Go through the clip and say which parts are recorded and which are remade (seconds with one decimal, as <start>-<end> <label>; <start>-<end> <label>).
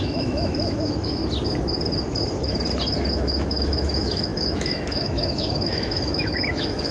0.0-1.2 remade; 1.2-3.1 recorded; 3.1-6.9 remade